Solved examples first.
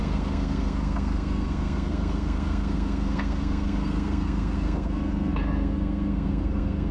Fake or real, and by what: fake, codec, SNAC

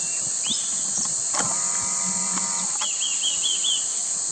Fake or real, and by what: real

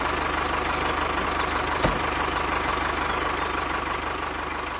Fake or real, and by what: real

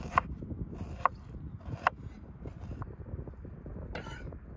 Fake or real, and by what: real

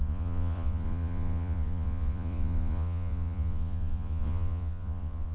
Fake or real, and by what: fake, vocoder, Vocos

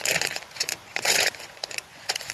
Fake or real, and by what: fake, vocoder, Vocos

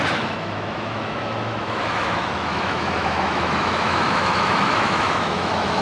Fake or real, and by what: fake, autoencoder, DAC-VAE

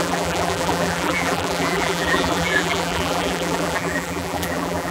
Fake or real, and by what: fake, vocoder, BigVGAN v2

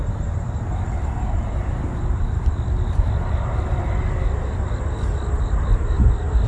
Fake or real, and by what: real